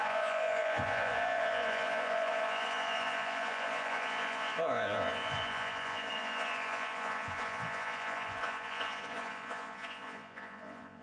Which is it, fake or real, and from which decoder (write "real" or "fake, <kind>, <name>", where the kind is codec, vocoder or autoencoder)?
fake, vocoder, Vocos